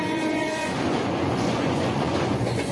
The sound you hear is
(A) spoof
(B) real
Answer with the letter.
A